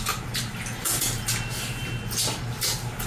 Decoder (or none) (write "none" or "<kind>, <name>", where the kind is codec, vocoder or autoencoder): none